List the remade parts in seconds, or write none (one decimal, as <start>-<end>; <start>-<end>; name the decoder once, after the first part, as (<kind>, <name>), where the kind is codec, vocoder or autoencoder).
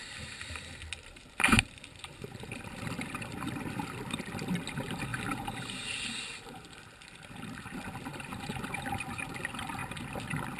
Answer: 0.0-5.1 (vocoder, BigVGAN v2); 6.4-9.8